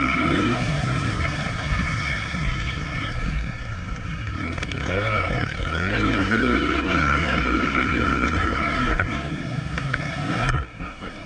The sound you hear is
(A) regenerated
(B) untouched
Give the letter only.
A